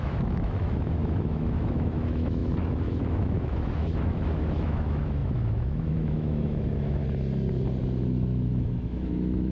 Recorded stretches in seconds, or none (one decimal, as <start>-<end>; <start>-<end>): 7.0-8.0